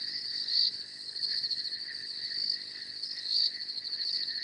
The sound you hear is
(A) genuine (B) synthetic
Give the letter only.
B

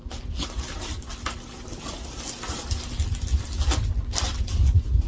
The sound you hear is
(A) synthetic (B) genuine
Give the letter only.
B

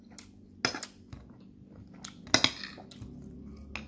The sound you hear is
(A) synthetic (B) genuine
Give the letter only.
B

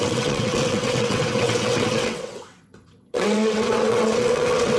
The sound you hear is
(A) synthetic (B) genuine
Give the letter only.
A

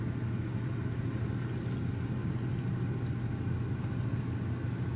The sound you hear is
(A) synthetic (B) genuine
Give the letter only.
B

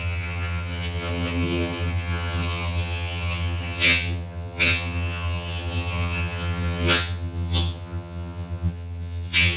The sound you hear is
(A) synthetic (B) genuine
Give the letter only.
A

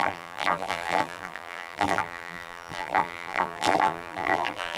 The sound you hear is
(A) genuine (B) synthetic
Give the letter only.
B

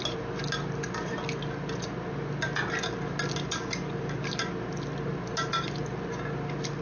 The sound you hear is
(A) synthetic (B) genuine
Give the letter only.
B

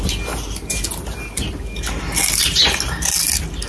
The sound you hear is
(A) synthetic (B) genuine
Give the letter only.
B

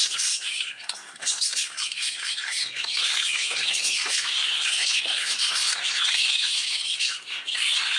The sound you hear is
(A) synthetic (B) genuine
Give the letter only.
A